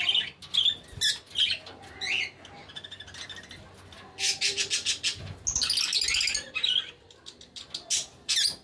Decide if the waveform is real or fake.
real